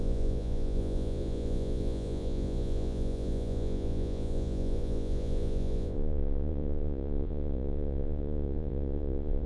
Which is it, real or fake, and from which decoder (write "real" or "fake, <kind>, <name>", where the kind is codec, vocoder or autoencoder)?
fake, vocoder, Vocos